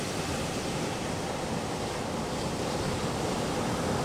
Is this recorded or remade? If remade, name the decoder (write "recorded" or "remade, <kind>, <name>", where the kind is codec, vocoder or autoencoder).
recorded